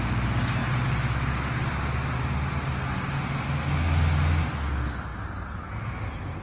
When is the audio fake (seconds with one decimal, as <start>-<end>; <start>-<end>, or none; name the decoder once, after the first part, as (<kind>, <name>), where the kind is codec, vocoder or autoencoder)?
none